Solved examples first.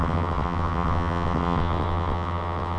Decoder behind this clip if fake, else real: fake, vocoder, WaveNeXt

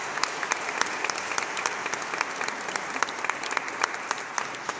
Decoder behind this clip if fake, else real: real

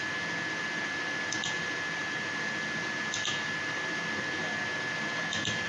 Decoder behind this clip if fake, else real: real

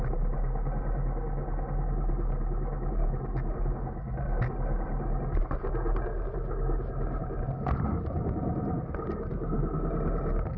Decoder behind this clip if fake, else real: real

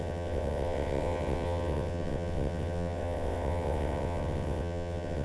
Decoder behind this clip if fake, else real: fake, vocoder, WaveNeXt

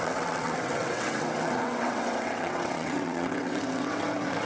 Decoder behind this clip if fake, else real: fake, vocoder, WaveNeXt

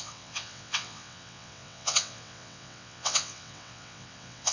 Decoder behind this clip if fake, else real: fake, vocoder, WaveNeXt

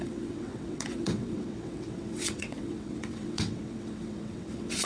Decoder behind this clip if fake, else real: fake, vocoder, WaveNeXt